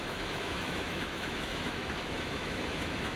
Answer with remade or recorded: remade